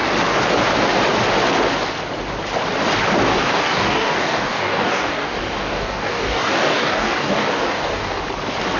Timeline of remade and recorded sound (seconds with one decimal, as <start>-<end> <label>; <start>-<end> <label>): 0.0-3.3 recorded; 3.3-8.2 remade; 8.2-8.8 recorded